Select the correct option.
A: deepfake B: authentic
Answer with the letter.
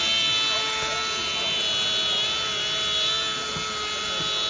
B